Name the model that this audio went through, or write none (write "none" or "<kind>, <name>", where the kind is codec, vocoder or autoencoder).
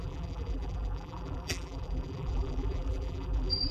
vocoder, BigVGAN v2